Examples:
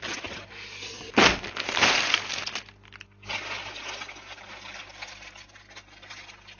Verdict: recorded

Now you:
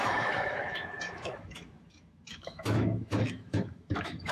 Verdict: remade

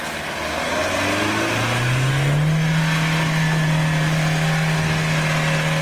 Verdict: recorded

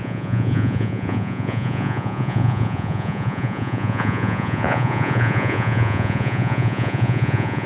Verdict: remade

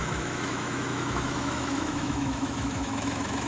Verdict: remade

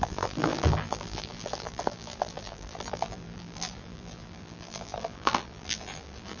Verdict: remade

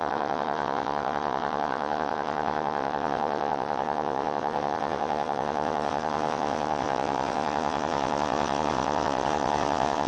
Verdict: remade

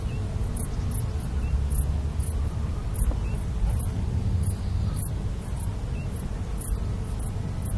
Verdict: recorded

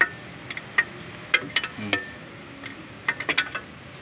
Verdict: recorded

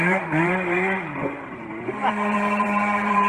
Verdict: remade